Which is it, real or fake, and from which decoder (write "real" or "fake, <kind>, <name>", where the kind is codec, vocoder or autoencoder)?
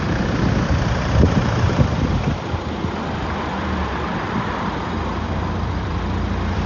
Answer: fake, vocoder, BigVGAN v2